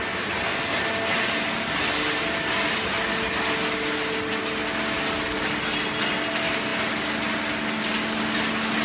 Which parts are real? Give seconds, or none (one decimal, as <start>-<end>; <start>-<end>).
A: 0.0-8.8

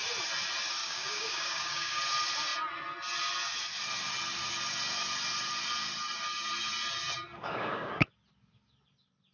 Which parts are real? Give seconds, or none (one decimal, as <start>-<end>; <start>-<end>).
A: 0.0-0.8; 2.0-7.4; 7.9-9.3

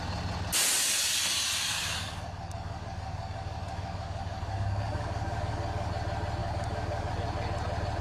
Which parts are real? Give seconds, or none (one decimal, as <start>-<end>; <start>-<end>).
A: 0.0-1.7; 5.9-6.4; 7.1-8.0